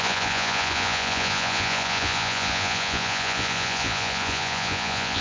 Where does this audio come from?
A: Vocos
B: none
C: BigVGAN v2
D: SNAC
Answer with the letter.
A